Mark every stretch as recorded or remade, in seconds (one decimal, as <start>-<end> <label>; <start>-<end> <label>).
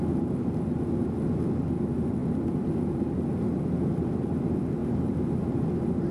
0.0-6.1 recorded